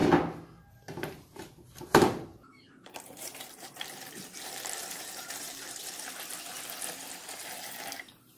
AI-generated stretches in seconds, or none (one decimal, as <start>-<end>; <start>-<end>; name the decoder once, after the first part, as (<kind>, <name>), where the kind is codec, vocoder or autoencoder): 0.7-5.8 (vocoder, BigVGAN v2); 7.6-8.4